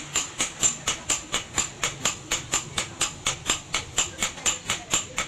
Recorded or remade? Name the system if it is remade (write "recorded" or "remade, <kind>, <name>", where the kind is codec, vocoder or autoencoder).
recorded